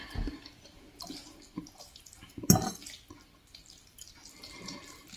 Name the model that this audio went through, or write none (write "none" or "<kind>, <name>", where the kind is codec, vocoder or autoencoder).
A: none